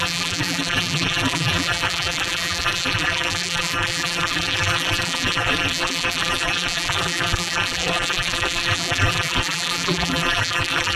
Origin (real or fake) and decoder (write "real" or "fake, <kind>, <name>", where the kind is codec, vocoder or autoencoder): fake, vocoder, BigVGAN v2